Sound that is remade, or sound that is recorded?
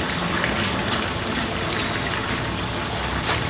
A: recorded